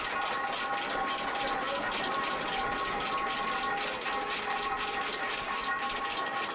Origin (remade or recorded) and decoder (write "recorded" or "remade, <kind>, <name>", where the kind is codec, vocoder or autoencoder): recorded